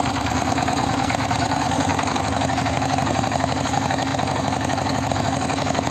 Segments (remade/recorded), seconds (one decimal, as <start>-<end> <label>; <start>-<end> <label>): 0.0-5.9 remade